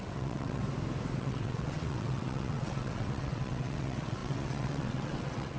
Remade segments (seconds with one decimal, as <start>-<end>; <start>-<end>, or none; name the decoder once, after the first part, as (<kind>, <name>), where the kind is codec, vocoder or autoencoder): 0.0-0.6 (vocoder, WaveNeXt); 1.2-5.6

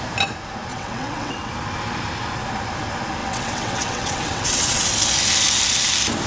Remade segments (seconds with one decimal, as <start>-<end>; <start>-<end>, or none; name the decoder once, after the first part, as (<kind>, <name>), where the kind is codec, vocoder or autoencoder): 0.7-1.5 (vocoder, WaveNeXt); 3.2-4.9

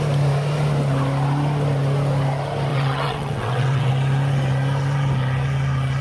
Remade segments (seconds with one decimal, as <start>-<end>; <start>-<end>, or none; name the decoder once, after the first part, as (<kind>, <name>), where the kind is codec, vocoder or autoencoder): 2.7-3.9 (vocoder, WaveNeXt)

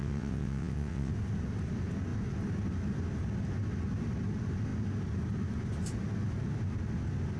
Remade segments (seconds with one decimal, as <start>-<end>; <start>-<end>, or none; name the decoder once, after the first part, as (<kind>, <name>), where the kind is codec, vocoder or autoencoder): 0.0-1.1 (vocoder, WaveNeXt)

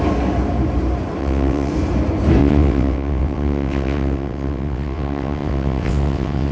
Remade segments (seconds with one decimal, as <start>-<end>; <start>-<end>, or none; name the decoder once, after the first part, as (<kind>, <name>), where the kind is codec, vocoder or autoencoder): 1.2-1.7 (vocoder, WaveNeXt); 2.4-6.5

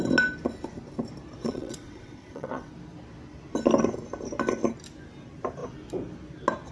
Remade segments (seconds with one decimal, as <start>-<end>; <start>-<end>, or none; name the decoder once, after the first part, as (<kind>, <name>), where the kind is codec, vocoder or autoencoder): 1.4-2.7 (vocoder, WaveNeXt)

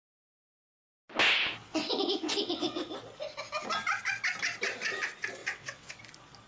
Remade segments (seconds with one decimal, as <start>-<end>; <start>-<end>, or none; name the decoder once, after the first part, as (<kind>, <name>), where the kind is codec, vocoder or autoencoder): 1.6-2.8 (vocoder, WaveNeXt); 5.4-6.0

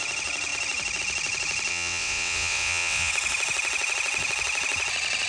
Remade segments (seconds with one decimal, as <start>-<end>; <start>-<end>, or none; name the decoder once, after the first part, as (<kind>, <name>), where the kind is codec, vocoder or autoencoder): 1.7-3.1 (vocoder, WaveNeXt)